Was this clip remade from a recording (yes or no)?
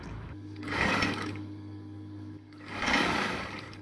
yes